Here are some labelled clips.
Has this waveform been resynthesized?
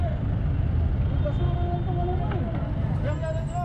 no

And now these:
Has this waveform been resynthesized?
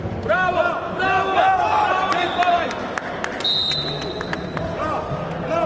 no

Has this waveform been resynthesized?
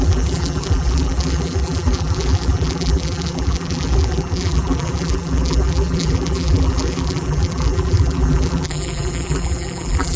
yes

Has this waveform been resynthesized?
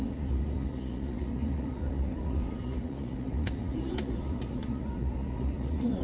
yes